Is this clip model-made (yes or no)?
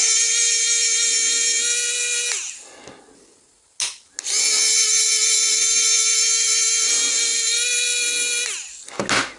no